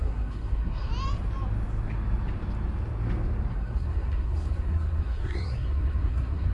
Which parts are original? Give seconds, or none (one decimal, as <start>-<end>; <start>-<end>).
0.9-3.5